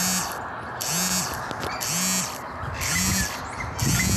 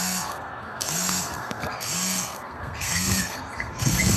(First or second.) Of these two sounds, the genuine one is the first